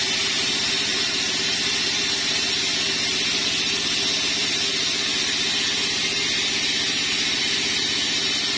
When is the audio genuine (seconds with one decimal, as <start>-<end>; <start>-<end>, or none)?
0.0-8.6